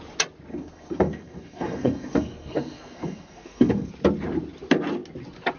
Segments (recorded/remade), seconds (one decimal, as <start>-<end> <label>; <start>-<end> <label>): 0.0-0.5 recorded; 0.5-3.9 remade; 3.9-5.6 recorded